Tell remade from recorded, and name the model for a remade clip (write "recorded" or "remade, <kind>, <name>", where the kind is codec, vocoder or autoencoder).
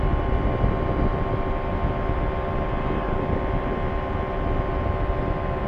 recorded